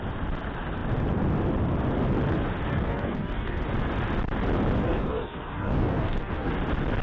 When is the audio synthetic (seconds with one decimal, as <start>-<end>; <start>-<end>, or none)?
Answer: 2.7-3.6; 4.8-6.5